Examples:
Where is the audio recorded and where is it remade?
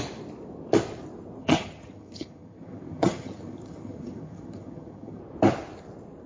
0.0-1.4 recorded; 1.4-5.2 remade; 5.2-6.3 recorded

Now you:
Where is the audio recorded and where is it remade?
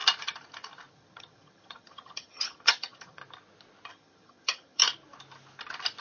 0.0-0.9 recorded; 0.9-3.2 remade; 3.2-3.9 recorded; 3.9-4.8 remade; 4.8-6.0 recorded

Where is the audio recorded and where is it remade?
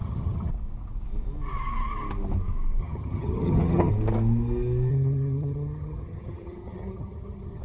0.0-0.5 remade; 0.5-2.8 recorded; 2.8-3.9 remade; 3.9-4.9 recorded; 4.9-7.6 remade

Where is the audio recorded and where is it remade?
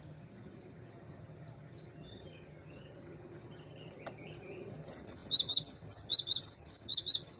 0.0-7.4 remade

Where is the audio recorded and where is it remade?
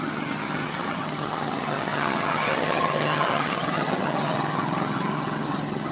0.0-5.9 remade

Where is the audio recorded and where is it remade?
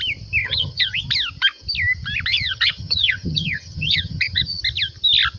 0.0-0.4 recorded; 0.4-1.0 remade; 1.0-2.3 recorded; 2.3-4.6 remade; 4.6-5.4 recorded